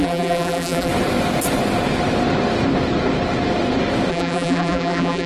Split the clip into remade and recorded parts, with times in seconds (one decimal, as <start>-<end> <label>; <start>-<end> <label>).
0.0-0.9 remade; 0.9-4.1 recorded; 4.1-5.3 remade